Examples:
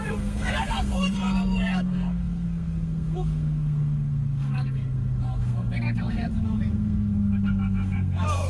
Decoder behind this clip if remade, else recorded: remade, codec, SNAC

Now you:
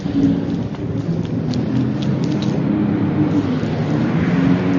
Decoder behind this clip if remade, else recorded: recorded